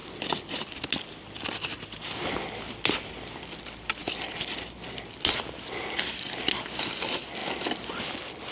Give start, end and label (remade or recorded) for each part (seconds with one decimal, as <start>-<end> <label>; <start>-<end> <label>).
0.0-8.5 recorded